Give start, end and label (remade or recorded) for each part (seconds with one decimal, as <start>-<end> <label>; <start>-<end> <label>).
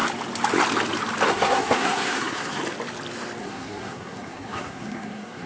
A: 0.0-1.3 recorded; 1.3-2.6 remade; 2.6-3.4 recorded; 3.4-5.5 remade